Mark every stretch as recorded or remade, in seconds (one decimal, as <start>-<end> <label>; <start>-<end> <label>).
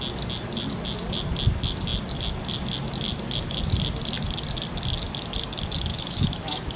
0.0-5.9 recorded; 5.9-6.8 remade